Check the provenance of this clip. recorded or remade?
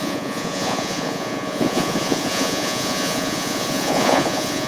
remade